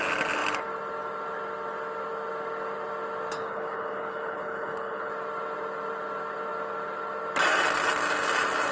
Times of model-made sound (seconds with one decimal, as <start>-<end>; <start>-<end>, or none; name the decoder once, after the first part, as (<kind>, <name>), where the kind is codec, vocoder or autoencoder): 3.4-5.1 (codec, HILCodec)